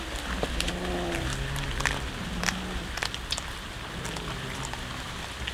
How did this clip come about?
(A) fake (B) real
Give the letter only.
B